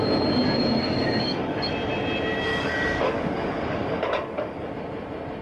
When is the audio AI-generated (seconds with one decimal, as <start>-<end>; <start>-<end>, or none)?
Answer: 0.8-1.7; 2.5-4.7

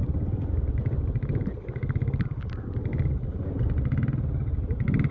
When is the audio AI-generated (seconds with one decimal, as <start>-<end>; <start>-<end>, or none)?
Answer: none

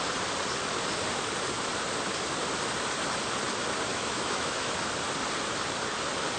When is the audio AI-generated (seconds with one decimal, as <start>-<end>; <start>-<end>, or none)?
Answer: 3.9-4.7

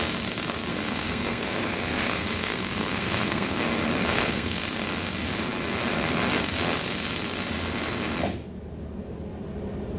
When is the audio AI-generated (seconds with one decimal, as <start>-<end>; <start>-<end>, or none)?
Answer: 0.7-3.6; 4.0-4.6